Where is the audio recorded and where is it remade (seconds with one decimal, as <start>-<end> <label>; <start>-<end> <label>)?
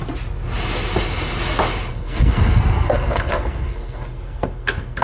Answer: 0.0-1.9 recorded; 1.9-5.0 remade